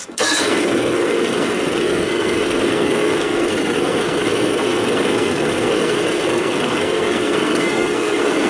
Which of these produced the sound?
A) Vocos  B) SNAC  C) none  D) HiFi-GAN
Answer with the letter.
B